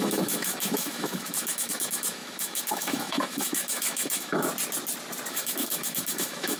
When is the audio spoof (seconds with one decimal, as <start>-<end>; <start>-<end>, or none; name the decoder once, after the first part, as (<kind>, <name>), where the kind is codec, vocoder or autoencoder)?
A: 0.0-4.5 (autoencoder, DAC-VAE); 5.3-6.6